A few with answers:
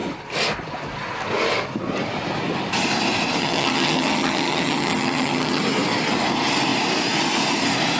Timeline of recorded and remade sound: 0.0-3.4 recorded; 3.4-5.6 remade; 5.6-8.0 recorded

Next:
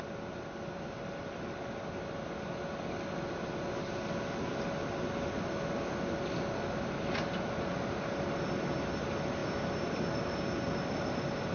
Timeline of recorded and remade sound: 0.0-11.5 recorded

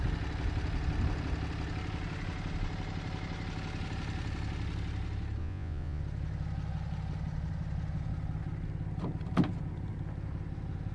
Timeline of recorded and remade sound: 0.0-5.4 recorded; 5.4-6.0 remade; 6.0-10.9 recorded

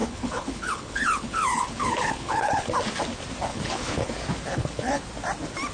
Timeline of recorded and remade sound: 0.0-2.7 remade; 2.7-3.5 recorded; 3.5-4.1 remade; 4.1-4.5 recorded; 4.5-5.0 remade; 5.0-5.7 recorded

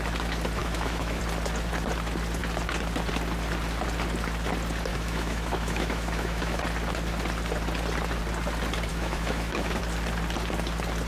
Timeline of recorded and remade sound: 0.0-0.6 recorded; 0.6-1.2 remade; 1.2-4.9 recorded; 4.9-6.6 remade; 6.6-8.9 recorded; 8.9-9.8 remade; 9.8-11.1 recorded

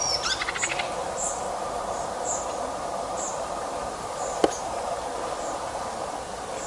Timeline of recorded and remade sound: 0.0-1.0 recorded; 1.0-5.0 remade; 5.0-6.7 recorded

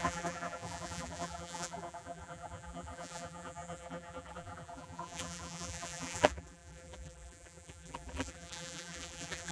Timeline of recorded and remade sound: 0.0-9.5 remade